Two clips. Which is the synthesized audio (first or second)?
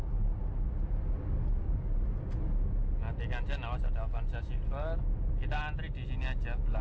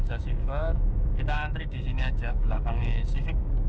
second